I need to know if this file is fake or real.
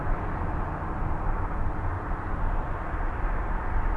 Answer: real